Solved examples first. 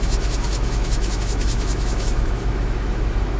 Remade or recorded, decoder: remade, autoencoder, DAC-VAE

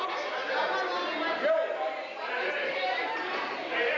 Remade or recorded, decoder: recorded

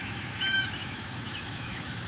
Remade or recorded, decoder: remade, autoencoder, DAC-VAE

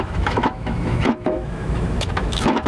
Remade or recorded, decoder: remade, autoencoder, DAC-VAE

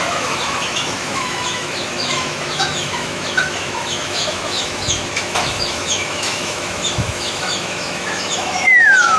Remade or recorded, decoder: remade, autoencoder, DAC-VAE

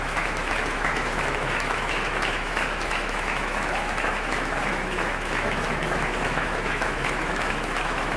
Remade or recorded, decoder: remade, autoencoder, DAC-VAE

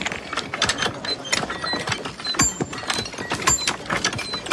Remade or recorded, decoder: recorded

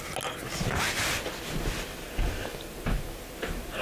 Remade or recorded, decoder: recorded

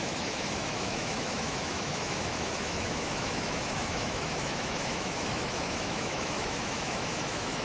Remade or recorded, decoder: remade, autoencoder, DAC-VAE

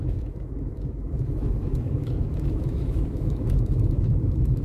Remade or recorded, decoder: remade, autoencoder, DAC-VAE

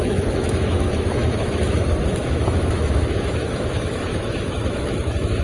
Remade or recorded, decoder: remade, autoencoder, DAC-VAE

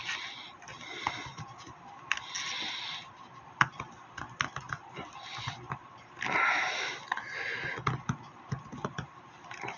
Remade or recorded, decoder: recorded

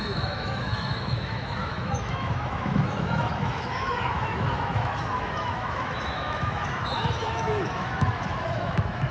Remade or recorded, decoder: remade, autoencoder, DAC-VAE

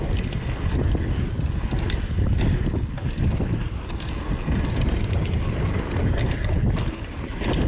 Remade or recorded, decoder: recorded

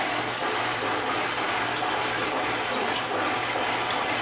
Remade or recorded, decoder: recorded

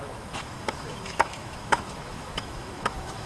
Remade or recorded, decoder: remade, autoencoder, DAC-VAE